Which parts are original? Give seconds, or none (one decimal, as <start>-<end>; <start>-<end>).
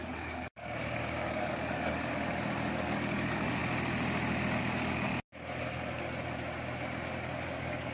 3.6-4.6; 5.1-7.1